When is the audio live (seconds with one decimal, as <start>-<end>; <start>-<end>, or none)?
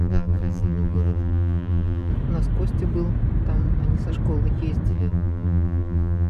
2.1-4.9